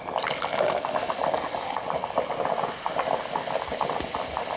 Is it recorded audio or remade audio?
recorded